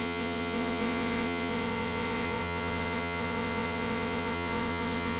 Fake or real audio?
fake